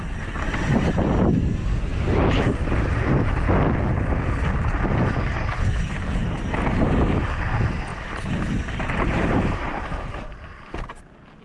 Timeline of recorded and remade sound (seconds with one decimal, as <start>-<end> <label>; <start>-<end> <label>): 0.0-7.9 recorded; 7.9-10.3 remade; 10.3-11.4 recorded